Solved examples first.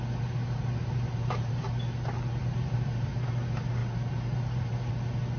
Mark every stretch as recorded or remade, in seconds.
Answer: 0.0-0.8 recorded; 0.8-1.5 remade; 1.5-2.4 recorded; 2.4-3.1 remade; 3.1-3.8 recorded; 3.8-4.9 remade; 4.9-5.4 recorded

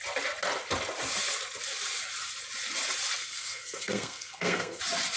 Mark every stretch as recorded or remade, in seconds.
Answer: 0.0-3.2 recorded; 3.2-4.8 remade; 4.8-5.2 recorded

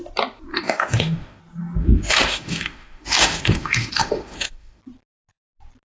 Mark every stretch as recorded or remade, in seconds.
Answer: 0.0-0.5 recorded; 0.5-1.4 remade; 1.4-1.8 recorded; 1.8-4.8 remade; 4.8-5.9 recorded

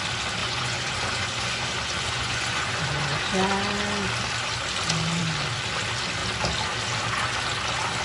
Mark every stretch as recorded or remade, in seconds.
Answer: 0.0-0.4 recorded; 0.4-3.2 remade; 3.2-8.0 recorded

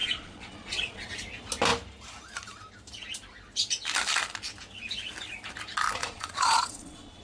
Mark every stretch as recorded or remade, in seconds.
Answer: 0.0-1.1 remade; 1.1-6.0 recorded; 6.0-7.2 remade